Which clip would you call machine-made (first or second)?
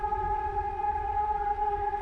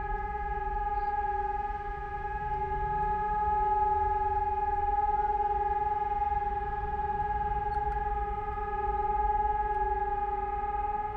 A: first